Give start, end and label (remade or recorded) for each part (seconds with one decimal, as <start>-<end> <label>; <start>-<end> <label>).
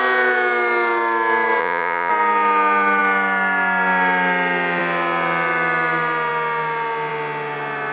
0.0-1.6 recorded; 1.6-2.1 remade; 2.1-7.9 recorded